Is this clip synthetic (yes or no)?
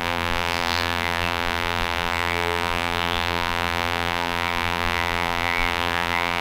yes